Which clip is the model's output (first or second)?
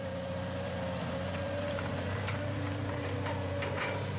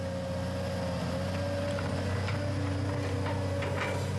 first